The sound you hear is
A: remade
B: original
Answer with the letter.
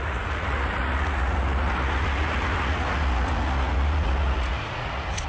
A